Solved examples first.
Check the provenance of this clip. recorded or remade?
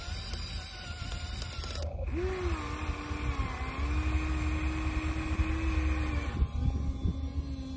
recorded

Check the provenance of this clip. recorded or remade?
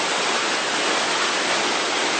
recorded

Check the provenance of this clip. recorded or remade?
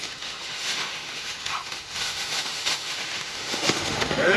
remade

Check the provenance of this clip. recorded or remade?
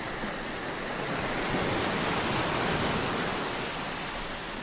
recorded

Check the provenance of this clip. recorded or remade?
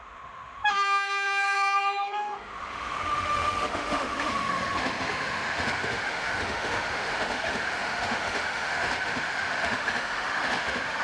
remade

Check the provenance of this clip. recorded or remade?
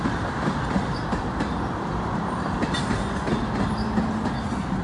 recorded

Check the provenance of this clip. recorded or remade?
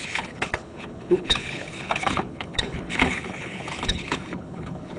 remade